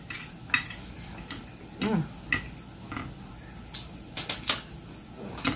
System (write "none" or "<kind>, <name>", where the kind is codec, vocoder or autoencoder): none